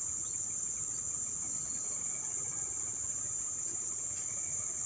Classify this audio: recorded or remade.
recorded